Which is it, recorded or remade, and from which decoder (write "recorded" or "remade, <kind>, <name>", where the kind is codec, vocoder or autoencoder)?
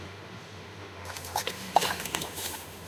remade, autoencoder, DAC-VAE